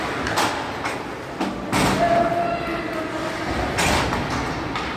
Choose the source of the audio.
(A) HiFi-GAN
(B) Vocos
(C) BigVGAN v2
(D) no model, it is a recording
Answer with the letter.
D